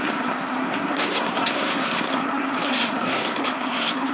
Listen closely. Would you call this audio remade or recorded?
remade